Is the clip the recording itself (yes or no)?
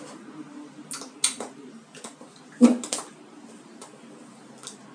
yes